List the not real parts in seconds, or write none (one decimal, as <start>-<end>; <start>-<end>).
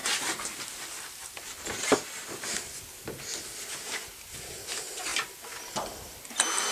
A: 0.0-2.8